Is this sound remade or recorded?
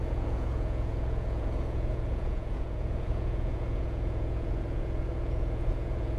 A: remade